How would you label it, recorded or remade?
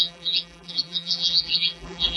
remade